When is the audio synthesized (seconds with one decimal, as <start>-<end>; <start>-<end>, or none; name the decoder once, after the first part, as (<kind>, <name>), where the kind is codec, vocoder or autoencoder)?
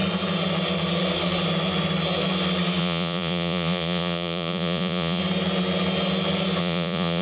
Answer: 2.8-5.2 (vocoder, Vocos); 6.6-7.2